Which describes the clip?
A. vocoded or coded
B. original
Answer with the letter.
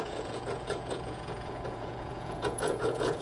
A